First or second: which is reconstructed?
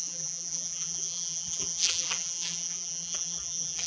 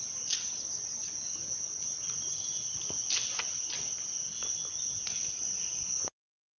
first